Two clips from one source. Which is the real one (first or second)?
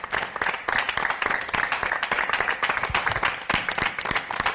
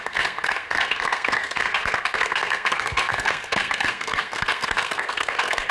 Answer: first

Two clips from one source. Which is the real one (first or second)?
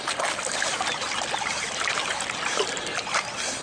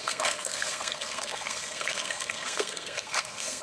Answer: first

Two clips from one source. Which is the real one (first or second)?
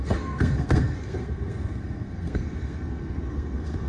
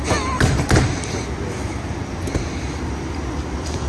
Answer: second